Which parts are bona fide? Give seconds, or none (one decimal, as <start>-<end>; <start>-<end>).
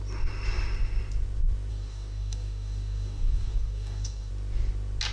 0.0-1.7; 4.3-5.1